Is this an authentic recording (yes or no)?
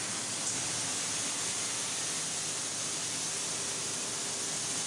yes